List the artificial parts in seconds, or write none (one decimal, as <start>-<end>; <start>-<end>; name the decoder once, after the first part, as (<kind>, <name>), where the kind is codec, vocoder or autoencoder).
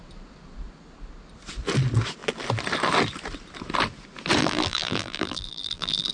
4.4-6.1 (vocoder, BigVGAN v2)